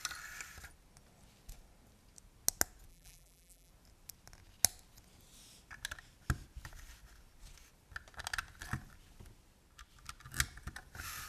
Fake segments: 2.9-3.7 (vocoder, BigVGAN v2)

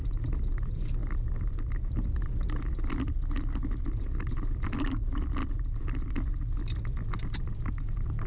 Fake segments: none

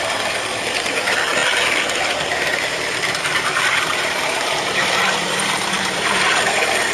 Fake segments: 2.5-6.5 (vocoder, BigVGAN v2)